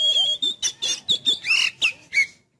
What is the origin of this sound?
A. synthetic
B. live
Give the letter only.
B